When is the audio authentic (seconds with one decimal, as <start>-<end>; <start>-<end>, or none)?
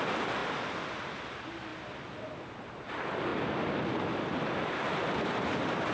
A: 0.0-5.9